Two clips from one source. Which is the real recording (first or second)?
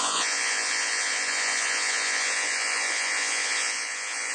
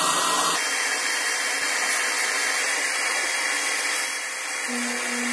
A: second